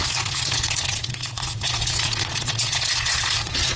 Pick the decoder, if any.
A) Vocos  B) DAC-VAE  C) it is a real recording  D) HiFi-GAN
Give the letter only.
A